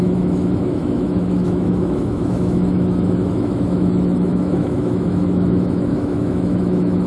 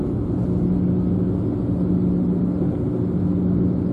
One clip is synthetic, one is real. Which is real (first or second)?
second